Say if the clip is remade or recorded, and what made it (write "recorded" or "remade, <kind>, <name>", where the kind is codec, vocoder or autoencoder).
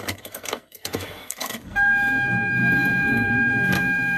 remade, codec, SNAC